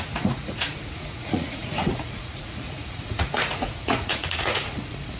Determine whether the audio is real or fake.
fake